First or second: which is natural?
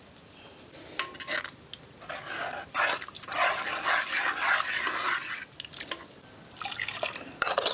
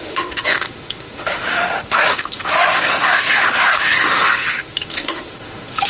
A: first